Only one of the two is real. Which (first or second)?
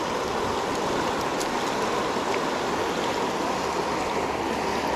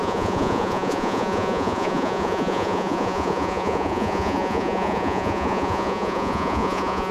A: first